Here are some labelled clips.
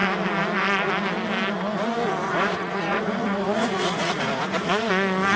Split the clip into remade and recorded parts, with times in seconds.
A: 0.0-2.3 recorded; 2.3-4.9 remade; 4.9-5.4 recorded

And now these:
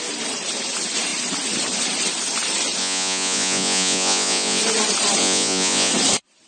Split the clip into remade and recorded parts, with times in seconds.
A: 0.0-2.8 recorded; 2.8-4.6 remade; 4.6-5.2 recorded; 5.2-5.9 remade; 5.9-6.5 recorded

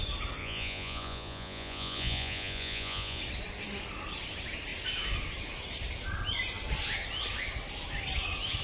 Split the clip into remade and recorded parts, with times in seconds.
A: 0.0-0.4 recorded; 0.4-3.2 remade; 3.2-8.6 recorded

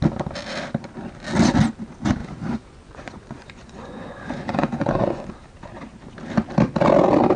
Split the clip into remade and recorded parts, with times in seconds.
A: 0.0-2.2 recorded; 2.2-5.3 remade; 5.3-7.4 recorded

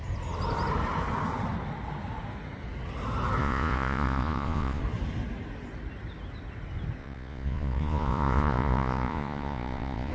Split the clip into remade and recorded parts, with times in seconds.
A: 0.0-3.4 recorded; 3.4-4.8 remade; 4.8-7.0 recorded; 7.0-10.1 remade